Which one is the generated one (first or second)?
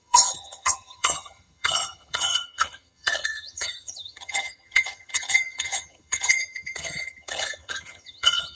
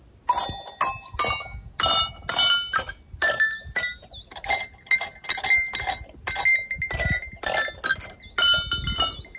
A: first